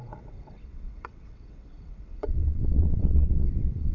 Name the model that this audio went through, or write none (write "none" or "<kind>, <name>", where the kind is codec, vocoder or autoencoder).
vocoder, WaveNeXt